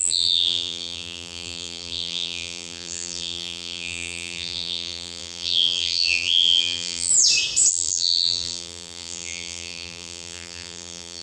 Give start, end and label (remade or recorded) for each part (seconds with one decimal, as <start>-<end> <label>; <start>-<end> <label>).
0.0-7.1 remade; 7.1-7.7 recorded; 7.7-11.2 remade